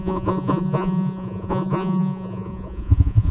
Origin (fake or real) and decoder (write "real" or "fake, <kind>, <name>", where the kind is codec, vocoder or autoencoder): fake, vocoder, Vocos